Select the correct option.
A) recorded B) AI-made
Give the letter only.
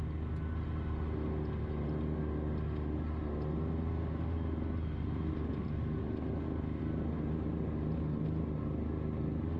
A